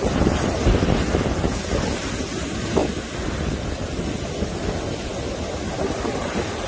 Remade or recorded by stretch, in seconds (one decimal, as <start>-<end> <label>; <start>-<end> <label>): 0.0-1.5 recorded; 1.5-2.8 remade; 2.8-5.8 recorded; 5.8-6.7 remade